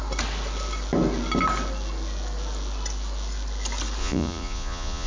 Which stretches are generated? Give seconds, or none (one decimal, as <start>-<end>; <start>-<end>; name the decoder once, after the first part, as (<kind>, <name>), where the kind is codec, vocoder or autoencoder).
4.0-5.1 (vocoder, Vocos)